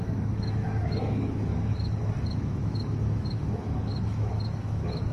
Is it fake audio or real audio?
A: fake